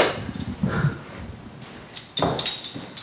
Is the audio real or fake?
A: real